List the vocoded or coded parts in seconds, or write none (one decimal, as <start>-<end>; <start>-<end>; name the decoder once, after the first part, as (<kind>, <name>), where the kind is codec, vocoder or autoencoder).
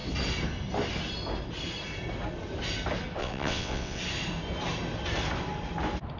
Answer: 3.2-4.0 (vocoder, WaveNeXt)